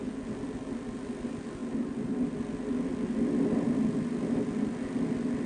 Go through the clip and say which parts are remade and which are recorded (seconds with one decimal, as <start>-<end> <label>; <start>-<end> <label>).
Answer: 0.0-5.5 recorded